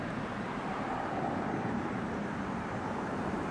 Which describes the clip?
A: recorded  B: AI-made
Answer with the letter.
B